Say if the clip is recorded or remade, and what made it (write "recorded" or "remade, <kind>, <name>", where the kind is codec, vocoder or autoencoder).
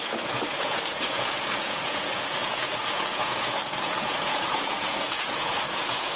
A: remade, vocoder, Vocos